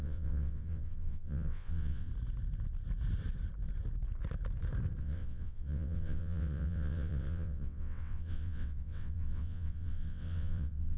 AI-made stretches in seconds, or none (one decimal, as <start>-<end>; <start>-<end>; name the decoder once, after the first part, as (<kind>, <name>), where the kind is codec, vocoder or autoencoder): 0.0-2.1 (vocoder, WaveNeXt); 5.0-11.0